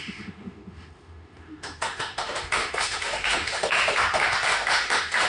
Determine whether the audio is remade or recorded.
remade